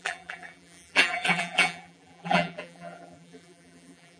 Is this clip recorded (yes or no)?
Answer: no